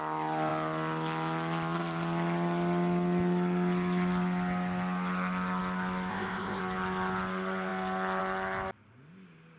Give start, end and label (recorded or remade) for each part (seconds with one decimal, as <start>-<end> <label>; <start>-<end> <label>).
0.0-6.1 recorded; 6.1-6.6 remade; 6.6-9.6 recorded